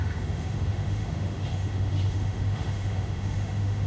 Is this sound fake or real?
fake